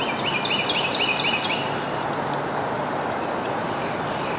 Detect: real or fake real